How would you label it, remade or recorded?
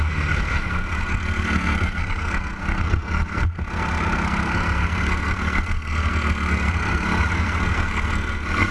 remade